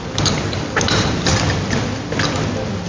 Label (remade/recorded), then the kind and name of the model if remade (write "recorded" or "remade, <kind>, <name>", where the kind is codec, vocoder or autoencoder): recorded